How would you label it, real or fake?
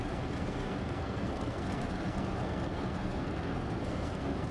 fake